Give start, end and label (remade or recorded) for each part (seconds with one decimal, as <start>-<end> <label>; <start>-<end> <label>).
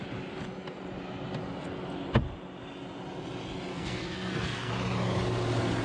0.0-3.7 recorded; 3.7-4.7 remade; 4.7-5.8 recorded